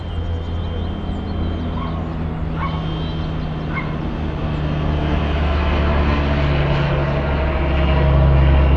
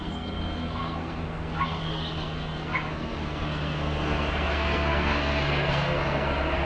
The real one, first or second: first